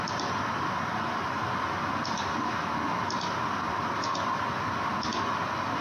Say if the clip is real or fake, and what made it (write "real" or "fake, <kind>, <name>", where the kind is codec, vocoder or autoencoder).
real